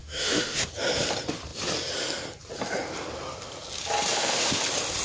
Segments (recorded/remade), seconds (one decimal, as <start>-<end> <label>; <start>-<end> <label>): 0.0-0.7 remade; 0.7-4.1 recorded; 4.1-4.6 remade; 4.6-5.0 recorded